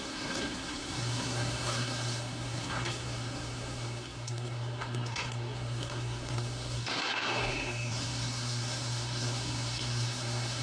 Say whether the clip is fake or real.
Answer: fake